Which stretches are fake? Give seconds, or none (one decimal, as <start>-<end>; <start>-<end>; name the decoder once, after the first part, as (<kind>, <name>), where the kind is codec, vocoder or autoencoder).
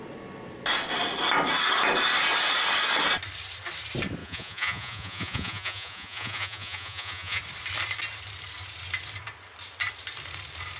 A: 4.2-7.4 (vocoder, Vocos)